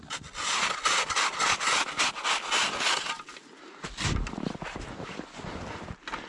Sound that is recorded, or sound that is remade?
recorded